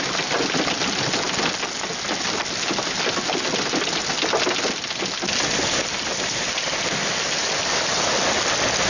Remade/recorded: recorded